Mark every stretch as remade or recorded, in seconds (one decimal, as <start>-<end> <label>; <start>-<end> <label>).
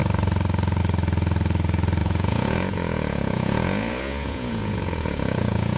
0.0-2.0 recorded; 2.0-5.8 remade